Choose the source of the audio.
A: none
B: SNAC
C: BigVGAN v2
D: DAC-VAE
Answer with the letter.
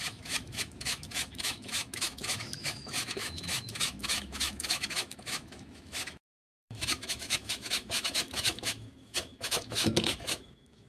D